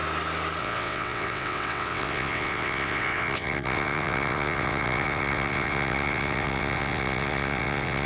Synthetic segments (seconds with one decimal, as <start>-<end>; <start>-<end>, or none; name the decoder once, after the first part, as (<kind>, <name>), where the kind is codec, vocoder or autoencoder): 0.6-8.1 (vocoder, WaveNeXt)